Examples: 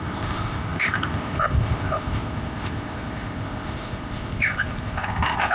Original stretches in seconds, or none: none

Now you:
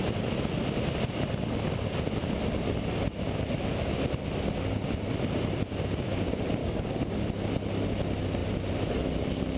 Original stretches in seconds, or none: 0.0-6.6; 7.1-9.6

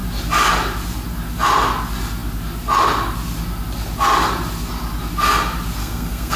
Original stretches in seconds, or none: 0.0-5.8

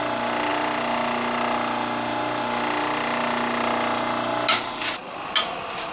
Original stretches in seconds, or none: 0.0-5.9

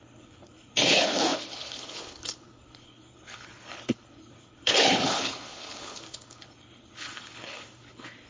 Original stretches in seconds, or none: none

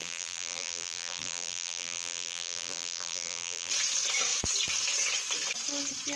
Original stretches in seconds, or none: 3.7-6.2

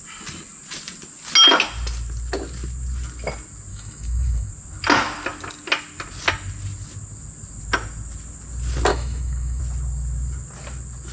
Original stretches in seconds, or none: 0.0-3.7; 4.5-8.9; 9.6-11.1

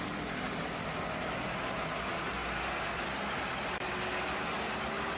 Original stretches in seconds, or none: 0.0-5.2